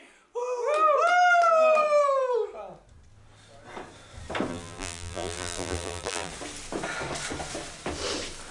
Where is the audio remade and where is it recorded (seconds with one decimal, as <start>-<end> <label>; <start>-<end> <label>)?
0.0-4.5 recorded; 4.5-6.3 remade; 6.3-8.5 recorded